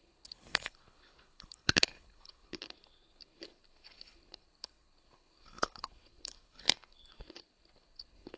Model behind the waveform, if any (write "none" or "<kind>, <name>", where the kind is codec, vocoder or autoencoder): codec, HILCodec